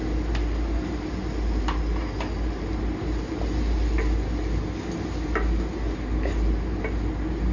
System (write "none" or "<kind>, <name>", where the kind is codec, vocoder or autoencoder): none